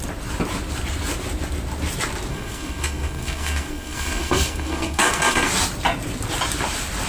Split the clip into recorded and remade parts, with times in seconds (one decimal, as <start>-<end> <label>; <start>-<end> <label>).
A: 0.0-2.3 recorded; 2.3-5.5 remade; 5.5-7.1 recorded